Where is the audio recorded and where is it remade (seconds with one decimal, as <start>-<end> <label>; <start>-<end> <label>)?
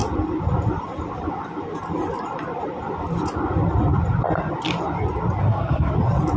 0.0-5.4 recorded; 5.4-5.9 remade; 5.9-6.4 recorded